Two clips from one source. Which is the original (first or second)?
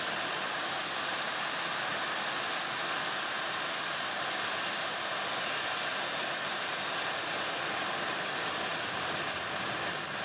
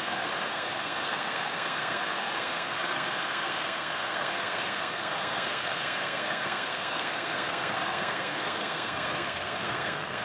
first